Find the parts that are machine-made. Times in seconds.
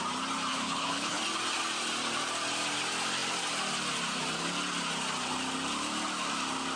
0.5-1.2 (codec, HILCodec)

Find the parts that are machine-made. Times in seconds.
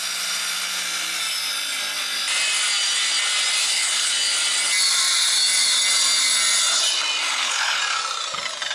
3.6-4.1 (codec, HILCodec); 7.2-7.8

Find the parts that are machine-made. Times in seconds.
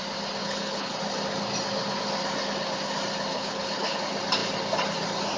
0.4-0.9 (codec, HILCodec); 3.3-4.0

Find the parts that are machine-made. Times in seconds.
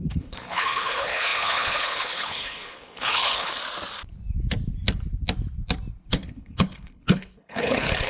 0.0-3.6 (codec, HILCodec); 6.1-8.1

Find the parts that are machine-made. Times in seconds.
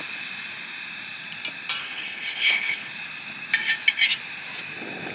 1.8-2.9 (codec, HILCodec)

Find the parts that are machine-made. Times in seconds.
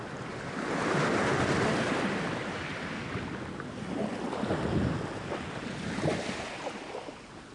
none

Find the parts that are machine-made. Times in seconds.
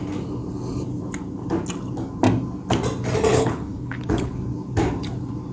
3.3-4.3 (codec, HILCodec)